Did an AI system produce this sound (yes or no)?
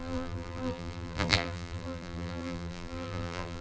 yes